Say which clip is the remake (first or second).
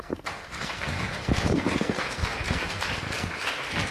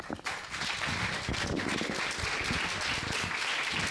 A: first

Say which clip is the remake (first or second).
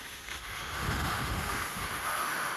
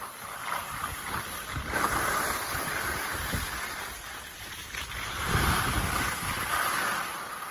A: first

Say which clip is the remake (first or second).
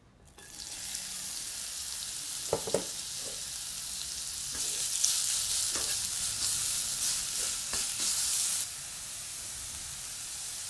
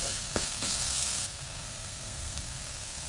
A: second